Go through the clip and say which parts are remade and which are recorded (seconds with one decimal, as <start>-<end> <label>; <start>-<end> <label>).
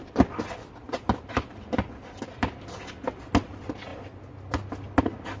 0.0-5.4 recorded